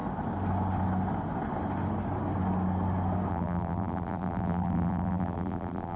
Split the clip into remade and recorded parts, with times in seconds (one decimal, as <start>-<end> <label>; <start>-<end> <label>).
0.0-3.3 recorded; 3.3-6.0 remade